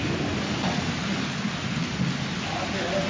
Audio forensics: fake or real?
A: real